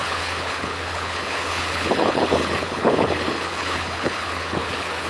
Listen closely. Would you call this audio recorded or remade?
remade